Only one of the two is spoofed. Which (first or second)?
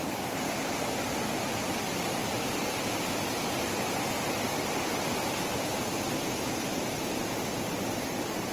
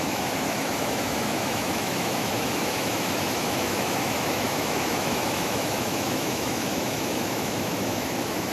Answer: second